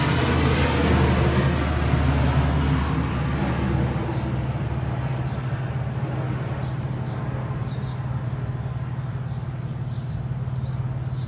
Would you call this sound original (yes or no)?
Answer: yes